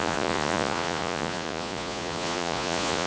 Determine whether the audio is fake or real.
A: fake